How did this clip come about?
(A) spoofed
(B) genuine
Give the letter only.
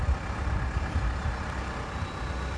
B